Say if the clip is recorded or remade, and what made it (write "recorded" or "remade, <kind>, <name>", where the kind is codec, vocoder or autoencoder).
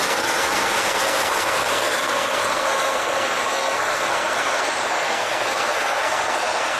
remade, codec, SNAC